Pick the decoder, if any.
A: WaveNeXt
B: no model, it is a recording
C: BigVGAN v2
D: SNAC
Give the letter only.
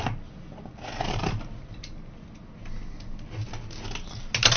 B